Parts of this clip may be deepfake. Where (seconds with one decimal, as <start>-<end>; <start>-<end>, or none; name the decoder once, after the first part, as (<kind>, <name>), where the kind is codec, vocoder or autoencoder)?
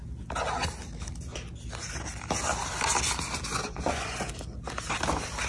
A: 3.5-4.3 (vocoder, Vocos)